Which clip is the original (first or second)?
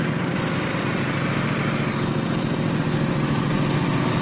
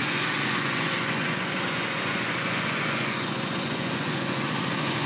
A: first